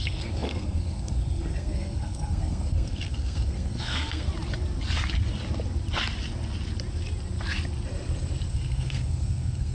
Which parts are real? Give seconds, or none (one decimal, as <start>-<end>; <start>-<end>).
4.3-8.5

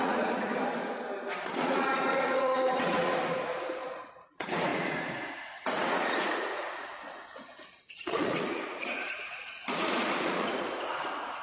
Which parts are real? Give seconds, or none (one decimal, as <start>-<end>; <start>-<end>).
0.5-1.6

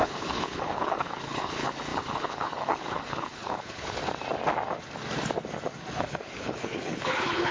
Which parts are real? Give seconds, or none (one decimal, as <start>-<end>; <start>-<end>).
4.0-6.0